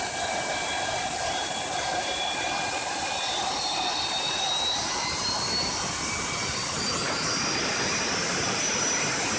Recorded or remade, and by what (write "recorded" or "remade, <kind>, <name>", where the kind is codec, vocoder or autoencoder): remade, vocoder, BigVGAN v2